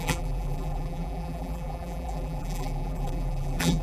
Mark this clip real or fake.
fake